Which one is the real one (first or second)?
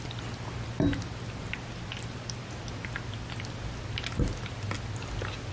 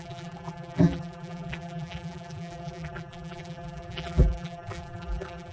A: first